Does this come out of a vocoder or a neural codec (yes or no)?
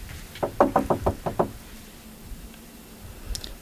no